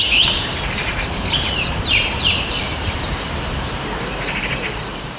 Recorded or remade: remade